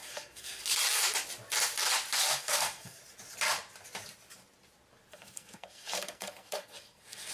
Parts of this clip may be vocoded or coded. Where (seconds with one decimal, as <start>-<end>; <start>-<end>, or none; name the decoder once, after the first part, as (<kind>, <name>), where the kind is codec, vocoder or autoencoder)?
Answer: 0.0-0.6 (codec, SNAC); 2.3-3.0; 5.1-7.3